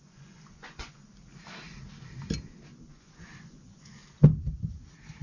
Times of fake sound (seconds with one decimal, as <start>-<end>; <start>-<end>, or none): 0.0-1.0; 2.8-4.0